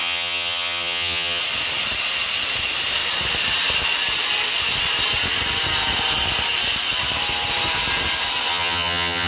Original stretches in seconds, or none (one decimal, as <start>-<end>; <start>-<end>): 1.4-8.5